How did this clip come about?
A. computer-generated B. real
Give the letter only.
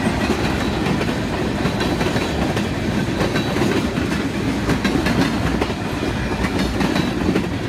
B